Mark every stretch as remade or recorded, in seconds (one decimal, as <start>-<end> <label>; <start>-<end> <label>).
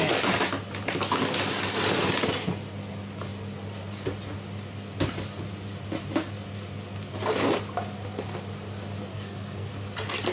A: 0.0-9.1 recorded; 9.1-9.7 remade; 9.7-10.3 recorded